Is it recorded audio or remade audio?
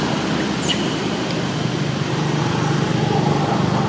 recorded